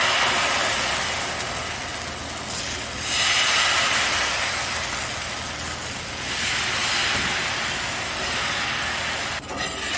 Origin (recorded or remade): recorded